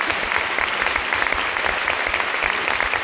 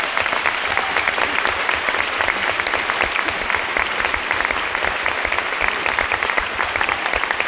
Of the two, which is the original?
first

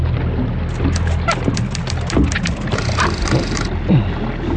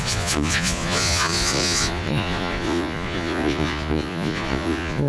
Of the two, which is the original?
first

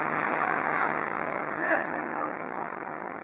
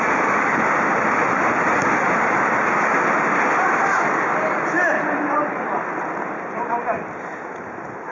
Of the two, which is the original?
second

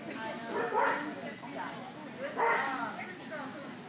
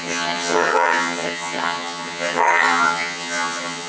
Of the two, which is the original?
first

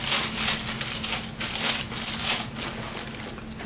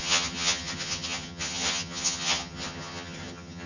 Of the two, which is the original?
first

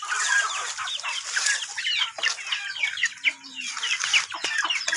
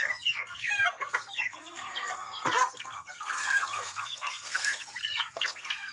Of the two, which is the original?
first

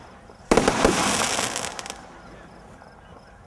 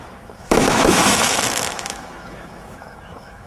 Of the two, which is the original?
first